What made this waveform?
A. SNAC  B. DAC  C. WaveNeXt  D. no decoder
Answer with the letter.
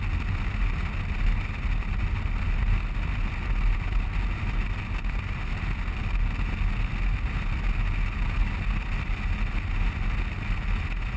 D